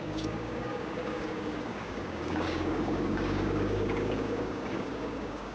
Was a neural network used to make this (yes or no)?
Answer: yes